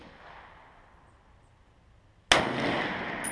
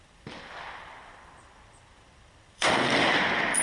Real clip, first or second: first